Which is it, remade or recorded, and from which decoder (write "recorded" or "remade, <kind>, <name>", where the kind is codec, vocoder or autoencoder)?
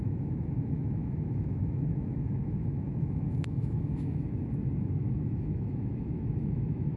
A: remade, autoencoder, DAC-VAE